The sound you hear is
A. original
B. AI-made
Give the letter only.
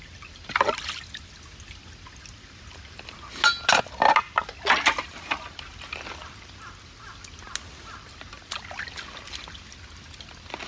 A